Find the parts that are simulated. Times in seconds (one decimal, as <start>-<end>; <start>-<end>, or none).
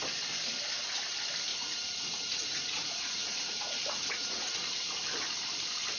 1.5-4.9